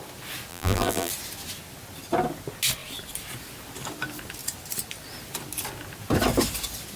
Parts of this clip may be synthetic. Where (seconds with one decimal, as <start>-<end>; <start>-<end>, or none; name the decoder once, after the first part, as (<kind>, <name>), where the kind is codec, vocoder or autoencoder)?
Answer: 0.5-1.1 (vocoder, BigVGAN v2)